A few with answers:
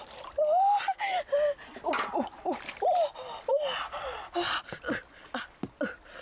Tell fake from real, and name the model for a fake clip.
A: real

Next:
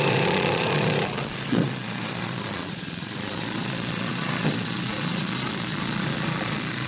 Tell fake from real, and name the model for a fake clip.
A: fake, vocoder, Vocos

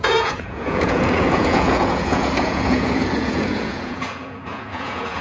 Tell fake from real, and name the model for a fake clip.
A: fake, vocoder, Vocos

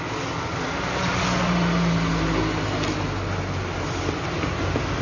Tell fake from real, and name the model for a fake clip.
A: real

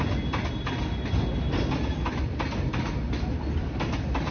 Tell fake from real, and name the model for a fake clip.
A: real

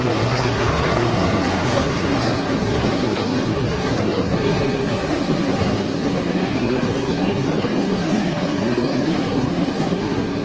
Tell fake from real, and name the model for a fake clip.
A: fake, codec, SNAC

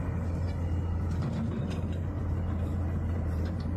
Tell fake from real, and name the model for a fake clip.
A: real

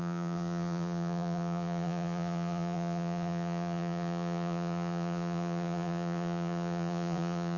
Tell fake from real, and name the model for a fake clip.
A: fake, vocoder, Vocos